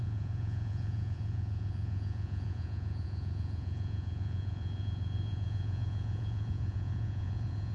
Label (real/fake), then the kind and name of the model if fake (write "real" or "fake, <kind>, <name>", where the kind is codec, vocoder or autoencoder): fake, vocoder, Vocos